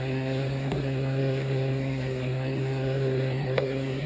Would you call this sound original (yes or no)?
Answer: no